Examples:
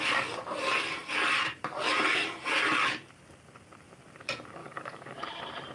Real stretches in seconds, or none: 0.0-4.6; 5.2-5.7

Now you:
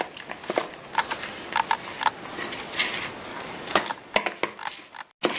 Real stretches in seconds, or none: 0.0-3.3; 3.9-5.4